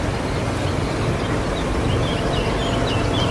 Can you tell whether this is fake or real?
real